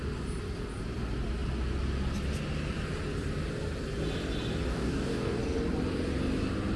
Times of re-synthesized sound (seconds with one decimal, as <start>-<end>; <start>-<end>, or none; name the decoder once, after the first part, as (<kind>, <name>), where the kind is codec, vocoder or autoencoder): 4.7-5.4 (codec, DAC)